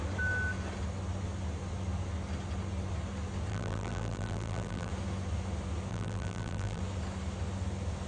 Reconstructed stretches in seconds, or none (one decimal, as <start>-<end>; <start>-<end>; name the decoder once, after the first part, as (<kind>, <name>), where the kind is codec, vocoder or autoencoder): 3.5-4.9 (vocoder, BigVGAN v2); 5.9-6.8